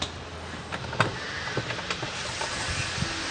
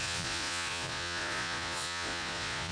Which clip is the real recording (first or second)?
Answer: first